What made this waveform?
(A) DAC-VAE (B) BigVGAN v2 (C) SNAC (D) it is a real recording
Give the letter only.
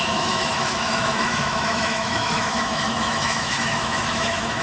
A